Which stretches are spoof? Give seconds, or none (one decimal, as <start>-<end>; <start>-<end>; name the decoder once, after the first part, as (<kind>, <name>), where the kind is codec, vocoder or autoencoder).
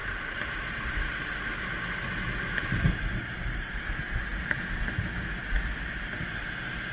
0.0-1.5 (vocoder, BigVGAN v2); 2.9-4.3; 6.2-6.9